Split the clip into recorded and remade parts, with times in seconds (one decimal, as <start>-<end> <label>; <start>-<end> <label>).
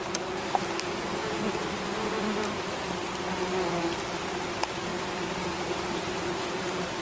0.0-4.9 recorded; 4.9-7.0 remade